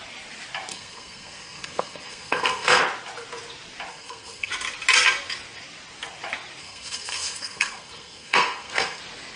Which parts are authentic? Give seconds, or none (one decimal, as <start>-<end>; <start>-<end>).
0.0-0.7; 2.8-3.9; 4.5-6.6; 9.0-9.4